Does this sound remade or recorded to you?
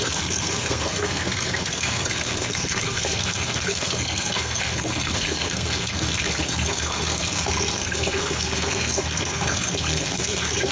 remade